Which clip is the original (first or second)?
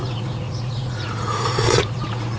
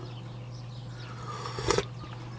second